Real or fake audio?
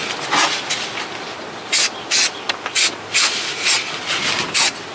real